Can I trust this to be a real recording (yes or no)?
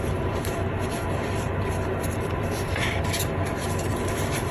no